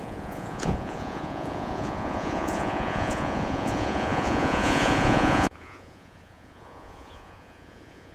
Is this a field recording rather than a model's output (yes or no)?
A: no